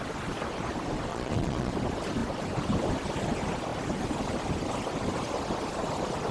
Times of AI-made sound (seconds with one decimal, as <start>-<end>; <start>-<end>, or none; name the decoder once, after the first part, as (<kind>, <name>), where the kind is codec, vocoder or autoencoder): 1.1-1.7 (vocoder, Vocos)